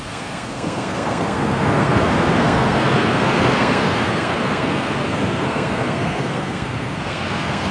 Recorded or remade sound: remade